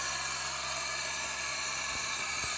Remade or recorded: recorded